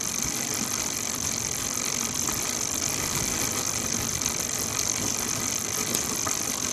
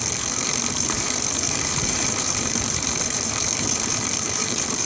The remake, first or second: second